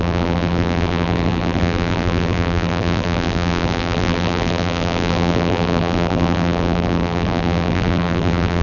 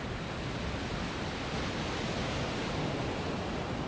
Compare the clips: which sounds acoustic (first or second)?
second